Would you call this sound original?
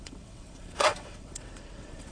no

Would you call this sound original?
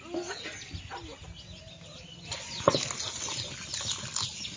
yes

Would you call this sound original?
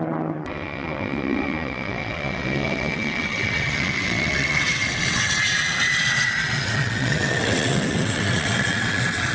no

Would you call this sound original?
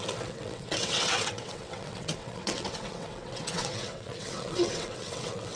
no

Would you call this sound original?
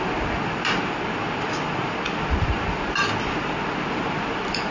yes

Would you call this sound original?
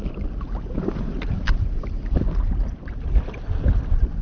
yes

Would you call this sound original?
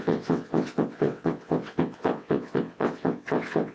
no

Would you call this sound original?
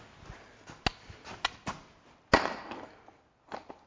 yes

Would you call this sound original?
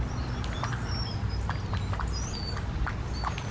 yes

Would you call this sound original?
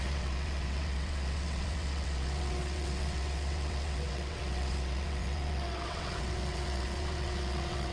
no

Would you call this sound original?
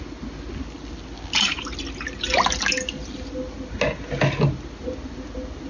yes